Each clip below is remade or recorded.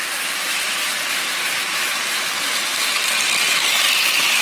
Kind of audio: recorded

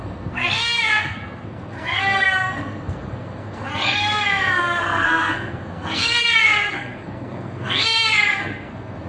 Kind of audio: remade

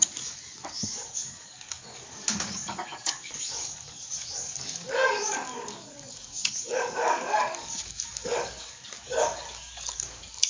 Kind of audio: remade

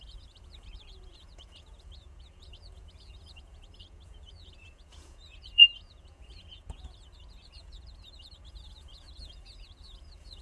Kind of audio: remade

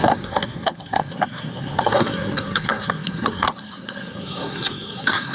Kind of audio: remade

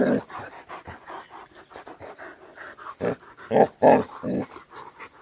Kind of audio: recorded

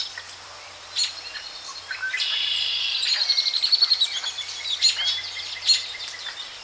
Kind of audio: recorded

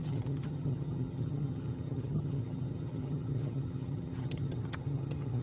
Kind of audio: remade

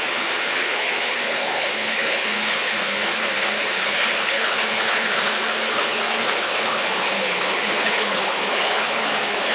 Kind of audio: remade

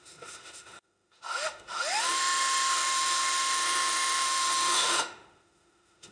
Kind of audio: remade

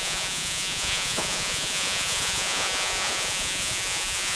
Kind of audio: remade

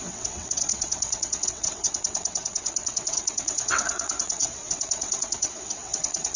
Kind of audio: remade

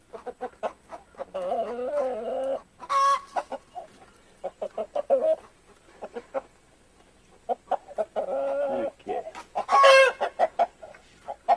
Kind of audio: recorded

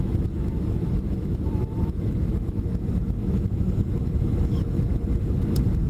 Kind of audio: remade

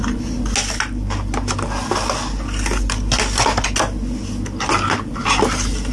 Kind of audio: recorded